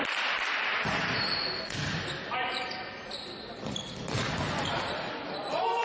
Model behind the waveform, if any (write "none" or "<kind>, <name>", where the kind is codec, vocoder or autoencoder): vocoder, BigVGAN v2